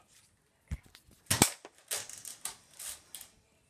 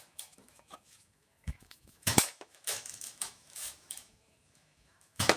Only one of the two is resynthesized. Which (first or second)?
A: second